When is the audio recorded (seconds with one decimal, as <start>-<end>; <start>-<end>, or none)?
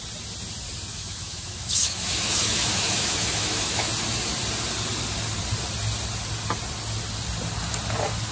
0.0-0.9; 3.9-8.3